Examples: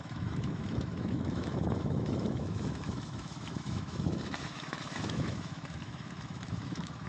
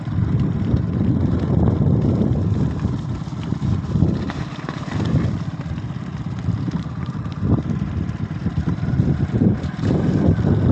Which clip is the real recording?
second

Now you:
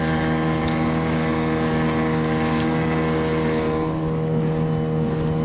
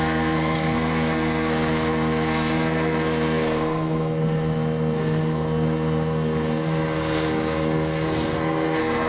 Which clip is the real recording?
first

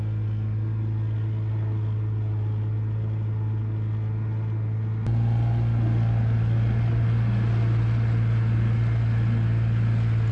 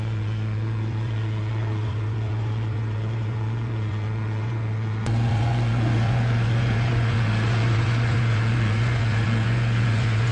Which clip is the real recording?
first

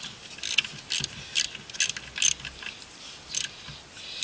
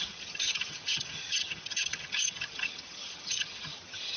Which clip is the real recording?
first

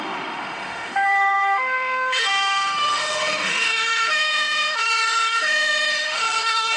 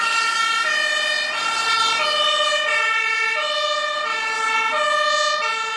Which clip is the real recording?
second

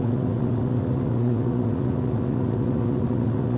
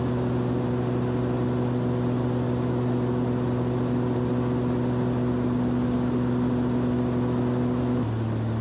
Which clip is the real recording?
second